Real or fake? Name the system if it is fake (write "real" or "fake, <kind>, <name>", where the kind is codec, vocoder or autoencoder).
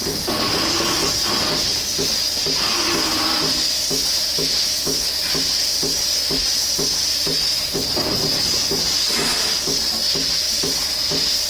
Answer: real